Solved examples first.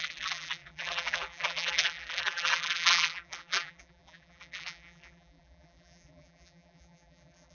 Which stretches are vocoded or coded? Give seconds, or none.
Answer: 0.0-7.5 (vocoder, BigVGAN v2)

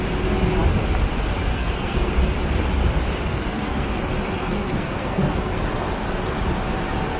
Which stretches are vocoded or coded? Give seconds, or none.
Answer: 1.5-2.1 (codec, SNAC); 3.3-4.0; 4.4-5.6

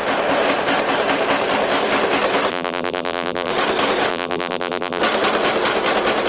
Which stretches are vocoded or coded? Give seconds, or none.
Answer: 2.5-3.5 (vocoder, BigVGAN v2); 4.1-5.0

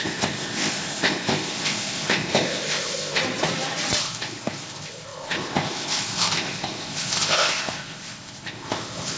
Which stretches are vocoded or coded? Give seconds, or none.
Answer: 0.0-3.2 (codec, ZipCodec); 4.0-9.2

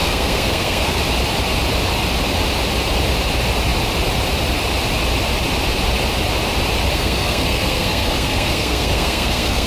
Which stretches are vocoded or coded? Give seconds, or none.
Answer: 0.0-1.0 (codec, SNAC); 6.9-9.7